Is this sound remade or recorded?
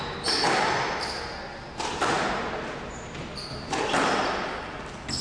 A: recorded